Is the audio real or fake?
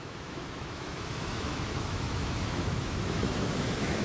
fake